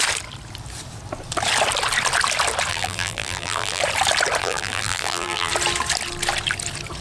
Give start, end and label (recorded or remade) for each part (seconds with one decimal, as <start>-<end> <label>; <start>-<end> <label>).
0.0-2.7 recorded; 2.7-3.8 remade; 3.8-4.4 recorded; 4.4-5.5 remade; 5.5-7.0 recorded